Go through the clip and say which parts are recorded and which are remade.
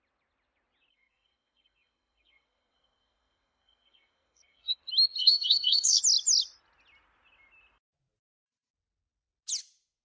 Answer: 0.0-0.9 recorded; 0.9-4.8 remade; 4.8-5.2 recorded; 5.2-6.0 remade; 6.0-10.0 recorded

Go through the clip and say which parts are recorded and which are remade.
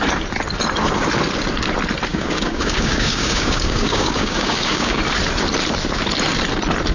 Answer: 0.0-2.1 recorded; 2.1-5.0 remade; 5.0-6.9 recorded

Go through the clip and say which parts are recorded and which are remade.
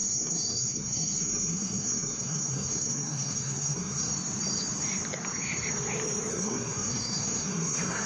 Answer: 0.0-4.1 remade; 4.1-6.3 recorded; 6.3-8.1 remade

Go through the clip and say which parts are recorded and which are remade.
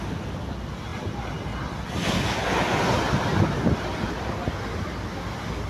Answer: 0.0-5.7 recorded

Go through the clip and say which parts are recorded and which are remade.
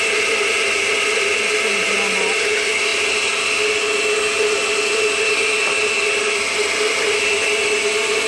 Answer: 0.0-8.3 recorded